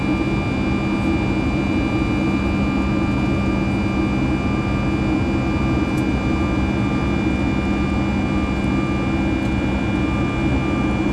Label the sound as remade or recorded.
recorded